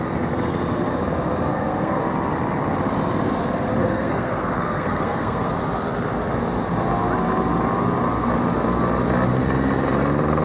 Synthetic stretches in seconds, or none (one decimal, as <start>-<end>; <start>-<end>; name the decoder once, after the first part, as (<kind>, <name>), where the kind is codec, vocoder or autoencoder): 1.5-2.0 (codec, SNAC); 3.8-5.5